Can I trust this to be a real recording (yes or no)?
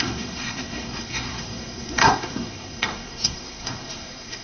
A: no